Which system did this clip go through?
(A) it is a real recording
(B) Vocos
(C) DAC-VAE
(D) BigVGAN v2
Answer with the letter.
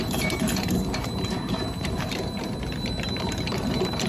D